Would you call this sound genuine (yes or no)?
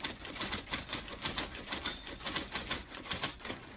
no